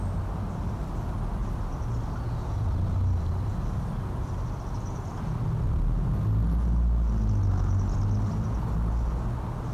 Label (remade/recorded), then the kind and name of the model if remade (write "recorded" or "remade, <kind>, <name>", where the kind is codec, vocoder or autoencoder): recorded